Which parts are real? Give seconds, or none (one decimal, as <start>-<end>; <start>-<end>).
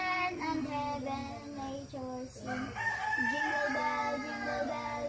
0.0-5.1